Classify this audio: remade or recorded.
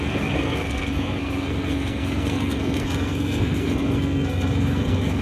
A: remade